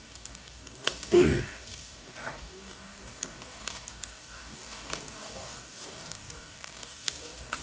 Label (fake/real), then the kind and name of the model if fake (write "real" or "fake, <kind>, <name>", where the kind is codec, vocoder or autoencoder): fake, codec, DAC